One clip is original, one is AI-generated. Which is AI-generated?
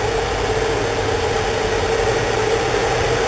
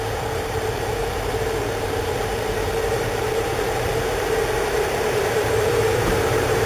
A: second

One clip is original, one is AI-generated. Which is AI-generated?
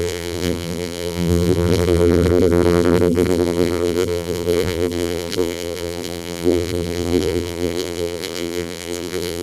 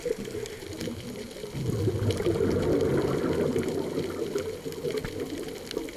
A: first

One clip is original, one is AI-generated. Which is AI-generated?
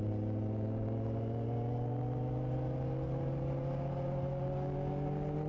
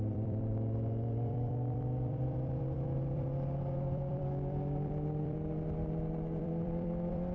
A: second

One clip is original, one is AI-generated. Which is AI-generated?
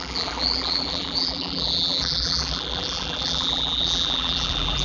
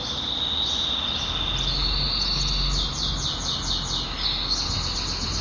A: first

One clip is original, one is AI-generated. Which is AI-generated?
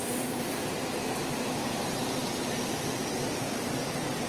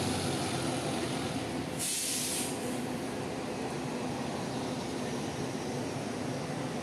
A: first